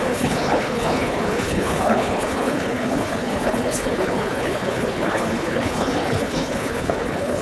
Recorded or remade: remade